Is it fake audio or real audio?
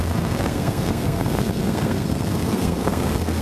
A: fake